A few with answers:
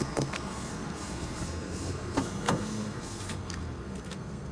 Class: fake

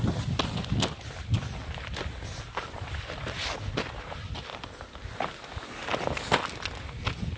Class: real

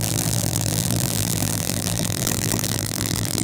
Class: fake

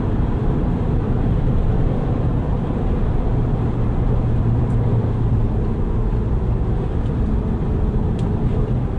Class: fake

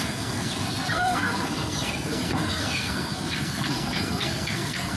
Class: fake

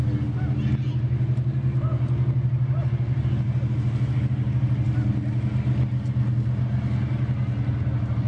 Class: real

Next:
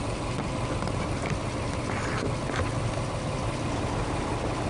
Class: real